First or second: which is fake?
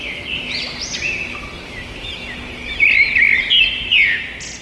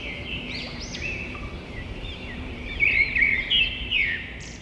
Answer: second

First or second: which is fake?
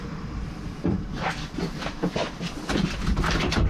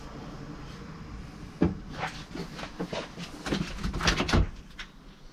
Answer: first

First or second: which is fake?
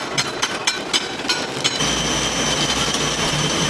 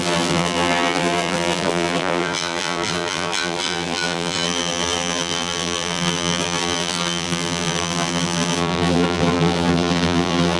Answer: second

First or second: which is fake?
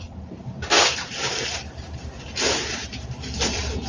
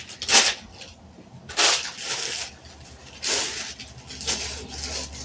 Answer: first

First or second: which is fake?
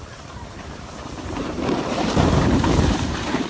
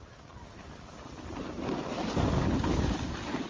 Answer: first